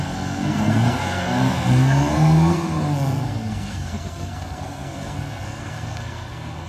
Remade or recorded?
remade